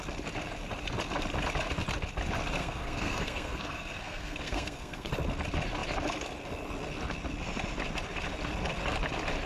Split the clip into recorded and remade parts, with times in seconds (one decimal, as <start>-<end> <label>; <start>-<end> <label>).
0.0-2.6 recorded; 2.6-5.1 remade; 5.1-9.5 recorded